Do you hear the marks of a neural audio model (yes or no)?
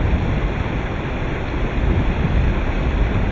no